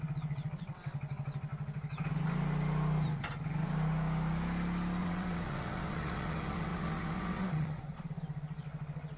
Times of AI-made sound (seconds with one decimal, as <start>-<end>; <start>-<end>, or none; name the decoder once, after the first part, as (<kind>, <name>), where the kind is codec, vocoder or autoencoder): 0.0-1.5 (vocoder, WaveNeXt); 5.0-9.2